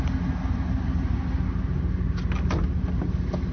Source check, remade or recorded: recorded